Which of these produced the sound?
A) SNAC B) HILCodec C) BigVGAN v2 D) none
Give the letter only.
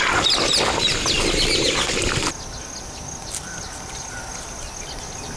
D